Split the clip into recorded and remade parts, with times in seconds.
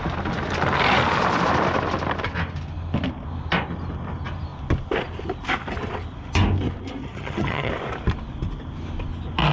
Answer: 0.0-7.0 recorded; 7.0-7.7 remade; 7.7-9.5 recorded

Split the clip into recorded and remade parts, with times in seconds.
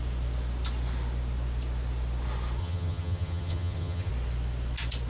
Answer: 0.0-2.6 recorded; 2.6-4.1 remade; 4.1-5.1 recorded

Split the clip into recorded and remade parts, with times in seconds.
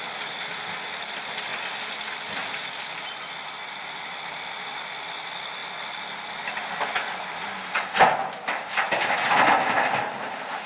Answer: 0.0-10.7 recorded